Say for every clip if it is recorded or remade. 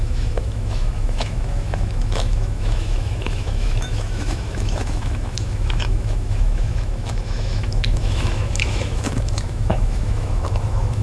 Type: remade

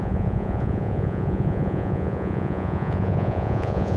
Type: remade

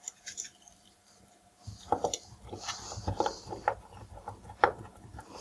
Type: remade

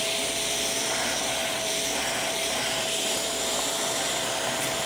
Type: remade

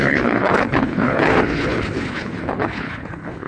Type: remade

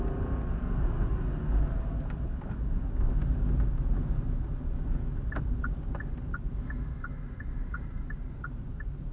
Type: recorded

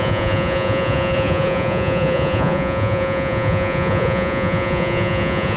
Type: remade